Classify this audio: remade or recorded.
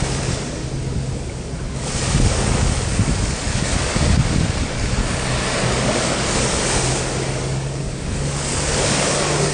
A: remade